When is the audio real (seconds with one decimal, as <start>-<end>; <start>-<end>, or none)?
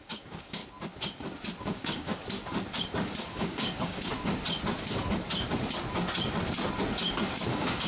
0.6-1.6; 2.1-3.2; 4.1-7.5